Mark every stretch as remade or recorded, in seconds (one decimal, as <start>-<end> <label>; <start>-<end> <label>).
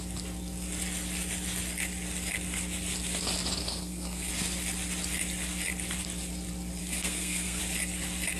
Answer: 0.0-3.6 recorded; 3.6-4.3 remade; 4.3-6.8 recorded; 6.8-7.6 remade; 7.6-8.4 recorded